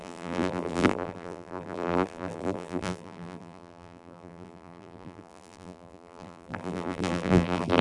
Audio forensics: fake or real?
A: fake